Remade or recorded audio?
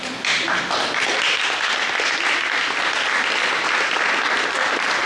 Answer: recorded